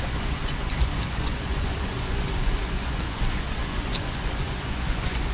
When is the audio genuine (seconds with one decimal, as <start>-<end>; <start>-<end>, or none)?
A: none